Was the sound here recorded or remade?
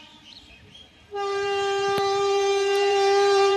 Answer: remade